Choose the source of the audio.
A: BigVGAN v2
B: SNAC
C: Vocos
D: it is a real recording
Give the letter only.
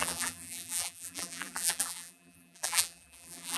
A